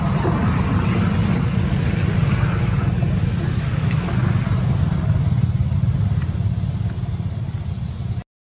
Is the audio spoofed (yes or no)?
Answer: no